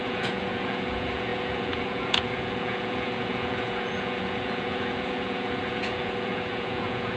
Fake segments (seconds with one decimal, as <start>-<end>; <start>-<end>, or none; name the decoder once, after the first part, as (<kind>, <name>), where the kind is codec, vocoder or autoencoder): 0.0-7.2 (vocoder, Vocos)